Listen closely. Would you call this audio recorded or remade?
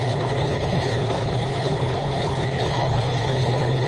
remade